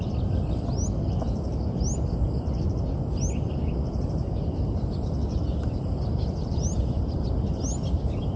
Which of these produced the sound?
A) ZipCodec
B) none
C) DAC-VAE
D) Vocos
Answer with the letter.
B